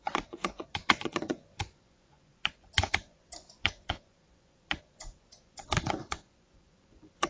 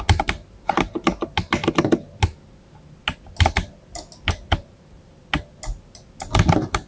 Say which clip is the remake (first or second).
first